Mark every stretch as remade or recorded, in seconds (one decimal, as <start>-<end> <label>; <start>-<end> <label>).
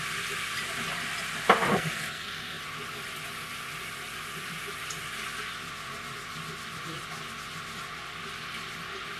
0.0-1.7 recorded; 1.7-2.6 remade; 2.6-9.2 recorded